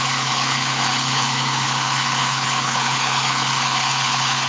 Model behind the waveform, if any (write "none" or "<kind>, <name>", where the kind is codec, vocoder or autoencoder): codec, HILCodec